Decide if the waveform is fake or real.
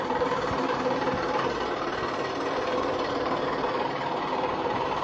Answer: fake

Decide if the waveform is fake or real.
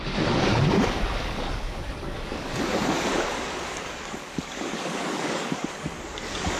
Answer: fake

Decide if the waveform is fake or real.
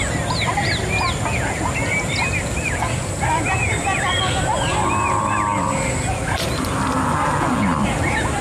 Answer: real